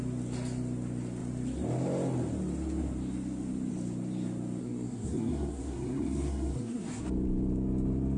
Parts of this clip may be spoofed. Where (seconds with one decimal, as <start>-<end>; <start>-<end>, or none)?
4.6-7.0